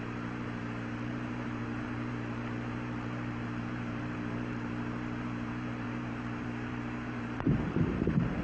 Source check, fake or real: fake